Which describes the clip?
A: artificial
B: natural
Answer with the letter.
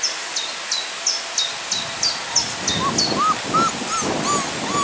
B